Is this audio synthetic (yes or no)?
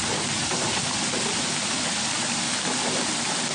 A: no